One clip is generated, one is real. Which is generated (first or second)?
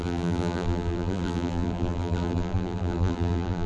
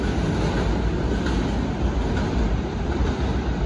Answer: first